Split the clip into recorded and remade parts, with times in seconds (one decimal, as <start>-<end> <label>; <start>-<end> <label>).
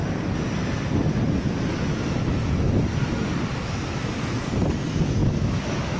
0.0-5.2 recorded; 5.2-6.0 remade